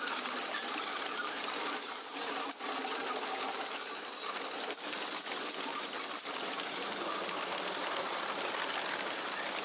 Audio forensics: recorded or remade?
recorded